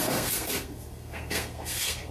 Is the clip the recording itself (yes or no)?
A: no